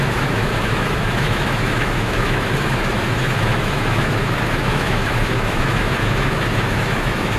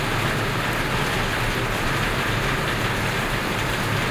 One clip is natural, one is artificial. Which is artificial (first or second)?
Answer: first